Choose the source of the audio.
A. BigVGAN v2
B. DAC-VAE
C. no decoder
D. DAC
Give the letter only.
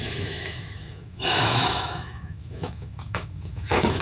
B